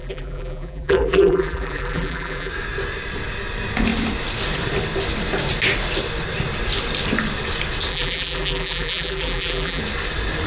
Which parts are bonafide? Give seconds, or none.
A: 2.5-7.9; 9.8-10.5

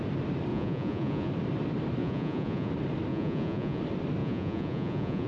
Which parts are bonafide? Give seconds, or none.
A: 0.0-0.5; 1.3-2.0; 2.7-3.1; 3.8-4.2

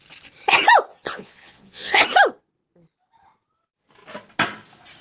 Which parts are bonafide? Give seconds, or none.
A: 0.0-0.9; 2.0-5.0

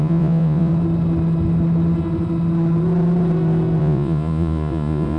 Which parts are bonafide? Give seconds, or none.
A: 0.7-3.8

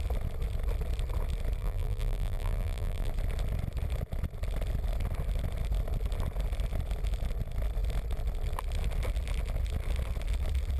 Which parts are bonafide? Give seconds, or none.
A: 0.0-1.6; 3.1-10.8

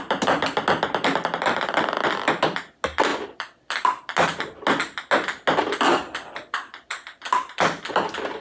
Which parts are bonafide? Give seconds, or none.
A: 0.0-8.4

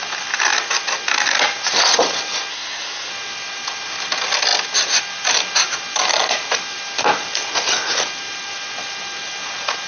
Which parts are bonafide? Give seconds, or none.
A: 0.0-2.5; 3.1-9.9